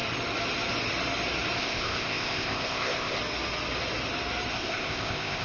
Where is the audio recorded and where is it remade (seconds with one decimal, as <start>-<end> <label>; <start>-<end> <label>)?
0.0-1.6 recorded; 1.6-3.2 remade; 3.2-4.5 recorded; 4.5-5.4 remade